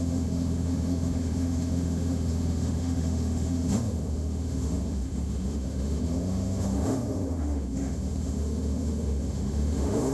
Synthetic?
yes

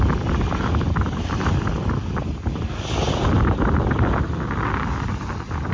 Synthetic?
no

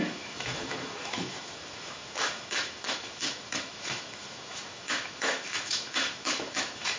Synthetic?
yes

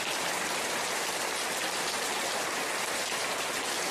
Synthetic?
no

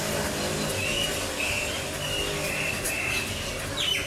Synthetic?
no